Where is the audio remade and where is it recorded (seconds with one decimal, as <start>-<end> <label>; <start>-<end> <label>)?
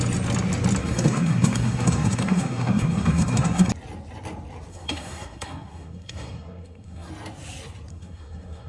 0.0-0.8 recorded; 0.8-3.7 remade; 3.7-4.7 recorded; 4.7-7.1 remade; 7.1-7.9 recorded; 7.9-8.7 remade